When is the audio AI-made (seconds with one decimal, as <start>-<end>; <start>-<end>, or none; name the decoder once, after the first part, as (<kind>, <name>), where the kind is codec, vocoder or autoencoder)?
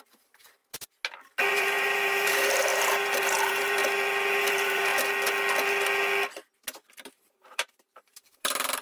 0.0-0.6 (vocoder, BigVGAN v2); 1.5-3.8; 4.4-4.9; 7.1-8.8